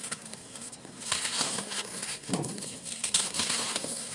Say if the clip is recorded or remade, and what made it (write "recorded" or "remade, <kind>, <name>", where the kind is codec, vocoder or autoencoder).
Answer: remade, codec, SNAC